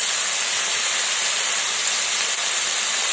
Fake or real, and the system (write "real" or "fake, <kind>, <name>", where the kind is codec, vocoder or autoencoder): real